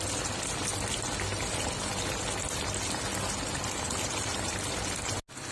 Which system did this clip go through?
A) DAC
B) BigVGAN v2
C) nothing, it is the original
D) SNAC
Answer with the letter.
C